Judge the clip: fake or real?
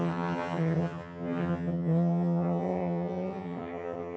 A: fake